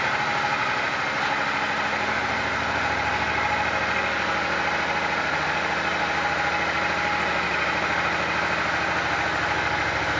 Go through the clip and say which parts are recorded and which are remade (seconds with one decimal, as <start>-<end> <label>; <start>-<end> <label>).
0.0-10.2 recorded